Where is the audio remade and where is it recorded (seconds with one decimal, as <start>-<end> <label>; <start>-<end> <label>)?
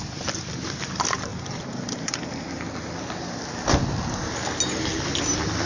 0.0-5.7 recorded